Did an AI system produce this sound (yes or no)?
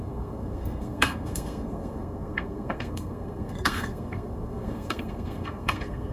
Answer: yes